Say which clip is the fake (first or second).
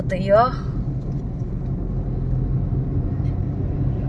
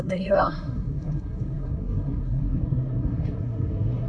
second